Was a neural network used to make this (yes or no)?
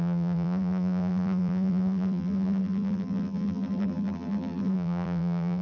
yes